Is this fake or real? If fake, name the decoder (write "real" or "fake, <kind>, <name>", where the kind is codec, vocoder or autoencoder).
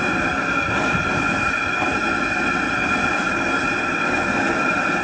real